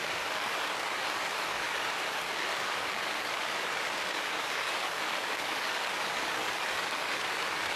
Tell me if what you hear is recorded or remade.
remade